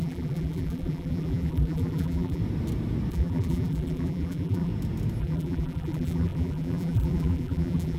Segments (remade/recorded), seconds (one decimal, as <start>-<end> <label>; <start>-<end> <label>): 0.0-2.4 remade; 2.4-3.1 recorded; 3.1-4.7 remade; 4.7-5.2 recorded; 5.2-8.0 remade